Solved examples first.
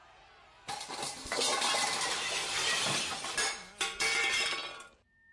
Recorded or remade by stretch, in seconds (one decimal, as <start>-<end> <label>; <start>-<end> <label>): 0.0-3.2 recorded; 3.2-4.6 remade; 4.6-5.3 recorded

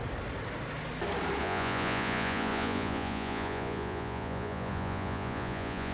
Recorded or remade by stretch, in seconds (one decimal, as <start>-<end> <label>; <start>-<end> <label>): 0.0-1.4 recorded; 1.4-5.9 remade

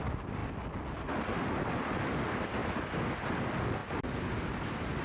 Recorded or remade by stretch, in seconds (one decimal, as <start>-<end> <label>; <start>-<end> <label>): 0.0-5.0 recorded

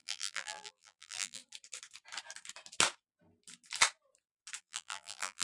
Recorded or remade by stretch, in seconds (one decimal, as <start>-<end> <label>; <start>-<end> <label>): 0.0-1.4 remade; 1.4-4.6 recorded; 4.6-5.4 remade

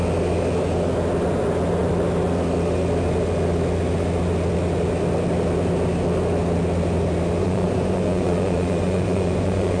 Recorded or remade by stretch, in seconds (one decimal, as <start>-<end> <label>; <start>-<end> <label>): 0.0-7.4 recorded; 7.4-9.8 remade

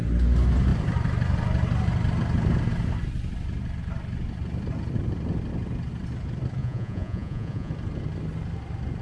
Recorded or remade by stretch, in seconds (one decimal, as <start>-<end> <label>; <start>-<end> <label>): 0.0-6.6 recorded; 6.6-7.7 remade; 7.7-9.0 recorded

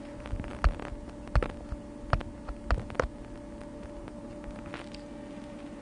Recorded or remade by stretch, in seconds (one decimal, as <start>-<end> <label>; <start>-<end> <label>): 0.0-0.5 remade; 0.5-4.0 recorded; 4.0-4.7 remade; 4.7-5.3 recorded; 5.3-5.8 remade

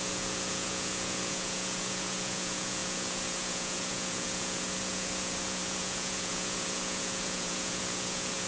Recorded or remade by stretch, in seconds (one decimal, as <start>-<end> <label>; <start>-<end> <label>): 0.0-8.5 remade